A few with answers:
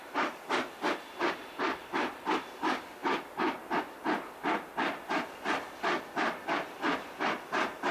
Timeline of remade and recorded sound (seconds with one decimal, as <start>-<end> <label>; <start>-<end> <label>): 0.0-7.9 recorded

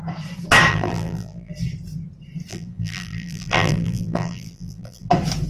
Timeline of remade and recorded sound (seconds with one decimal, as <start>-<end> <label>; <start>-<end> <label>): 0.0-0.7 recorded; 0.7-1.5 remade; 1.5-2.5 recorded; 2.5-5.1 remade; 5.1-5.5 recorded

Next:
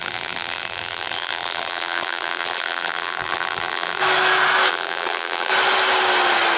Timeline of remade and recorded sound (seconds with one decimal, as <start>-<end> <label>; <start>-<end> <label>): 0.0-4.0 remade; 4.0-4.7 recorded; 4.7-5.5 remade; 5.5-6.6 recorded

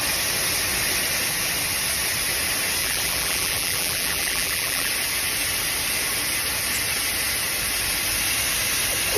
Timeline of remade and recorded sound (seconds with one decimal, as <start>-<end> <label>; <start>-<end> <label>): 0.0-2.8 recorded; 2.8-4.9 remade; 4.9-9.2 recorded

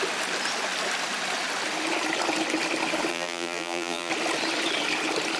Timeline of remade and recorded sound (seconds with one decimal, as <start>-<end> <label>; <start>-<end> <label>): 0.0-3.1 recorded; 3.1-4.1 remade; 4.1-5.4 recorded

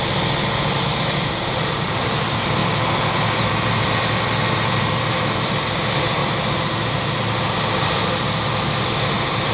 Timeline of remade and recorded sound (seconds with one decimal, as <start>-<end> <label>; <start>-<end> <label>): 0.0-2.6 remade; 2.6-3.5 recorded; 3.5-6.2 remade; 6.2-7.5 recorded; 7.5-9.5 remade

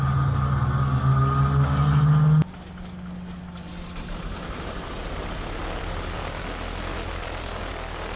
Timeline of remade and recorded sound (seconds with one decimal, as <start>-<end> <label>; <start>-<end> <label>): 0.0-5.6 recorded; 5.6-6.4 remade; 6.4-6.9 recorded; 6.9-7.7 remade; 7.7-8.2 recorded

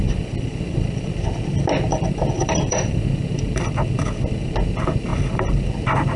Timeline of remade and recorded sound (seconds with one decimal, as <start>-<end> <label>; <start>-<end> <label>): 0.0-1.1 remade; 1.1-1.9 recorded; 1.9-4.5 remade; 4.5-5.1 recorded; 5.1-5.7 remade; 5.7-6.2 recorded